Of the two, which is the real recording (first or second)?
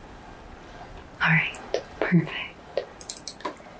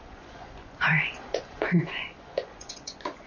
first